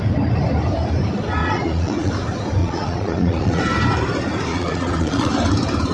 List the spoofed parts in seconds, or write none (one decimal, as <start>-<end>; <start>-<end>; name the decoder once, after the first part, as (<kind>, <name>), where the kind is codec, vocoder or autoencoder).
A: 1.4-2.1 (vocoder, Vocos); 2.6-3.6; 4.5-5.3